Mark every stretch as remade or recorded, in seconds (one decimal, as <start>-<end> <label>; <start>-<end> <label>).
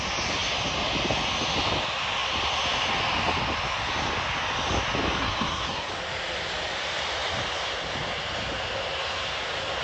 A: 0.0-5.2 recorded; 5.2-5.9 remade; 5.9-9.8 recorded